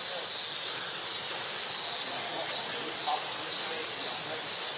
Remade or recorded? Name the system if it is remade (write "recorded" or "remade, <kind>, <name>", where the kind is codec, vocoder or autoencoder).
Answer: recorded